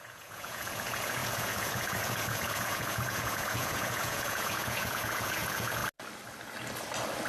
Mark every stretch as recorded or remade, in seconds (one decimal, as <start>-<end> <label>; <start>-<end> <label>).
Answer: 0.0-5.8 remade; 5.8-7.3 recorded

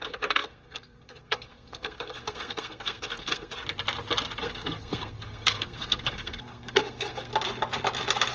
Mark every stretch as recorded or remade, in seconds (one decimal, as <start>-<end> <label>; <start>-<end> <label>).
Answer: 0.0-3.5 remade; 3.5-4.4 recorded; 4.4-7.3 remade; 7.3-8.3 recorded

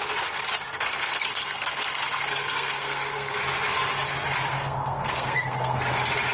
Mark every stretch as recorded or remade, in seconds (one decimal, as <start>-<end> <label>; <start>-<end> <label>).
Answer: 0.0-0.9 recorded; 0.9-3.4 remade; 3.4-4.5 recorded; 4.5-5.8 remade; 5.8-6.3 recorded

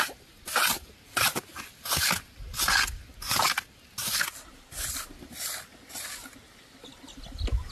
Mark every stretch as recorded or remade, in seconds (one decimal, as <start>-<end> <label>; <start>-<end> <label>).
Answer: 0.0-7.7 recorded